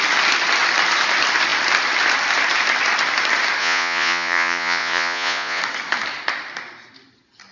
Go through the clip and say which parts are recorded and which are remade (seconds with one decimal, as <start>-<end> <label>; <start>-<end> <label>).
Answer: 0.0-3.6 recorded; 3.6-5.6 remade; 5.6-7.5 recorded